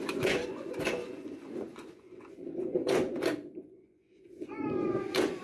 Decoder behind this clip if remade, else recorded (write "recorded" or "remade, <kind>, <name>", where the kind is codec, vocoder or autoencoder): remade, vocoder, Vocos